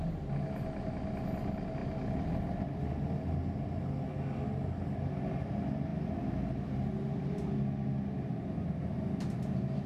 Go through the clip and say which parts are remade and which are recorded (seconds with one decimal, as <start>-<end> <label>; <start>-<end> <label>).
0.0-9.9 recorded